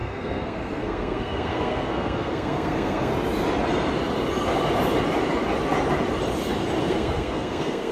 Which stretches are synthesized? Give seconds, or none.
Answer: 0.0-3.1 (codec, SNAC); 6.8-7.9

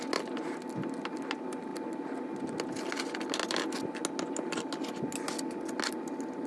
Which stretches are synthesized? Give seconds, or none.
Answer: none

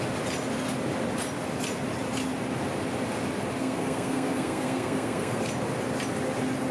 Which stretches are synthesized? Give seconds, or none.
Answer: 3.6-5.4 (codec, SNAC)

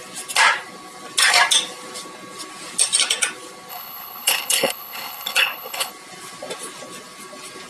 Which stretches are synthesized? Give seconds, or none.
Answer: 3.7-5.9 (codec, HILCodec)